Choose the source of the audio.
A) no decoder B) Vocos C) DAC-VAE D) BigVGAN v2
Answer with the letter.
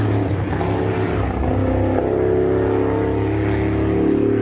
A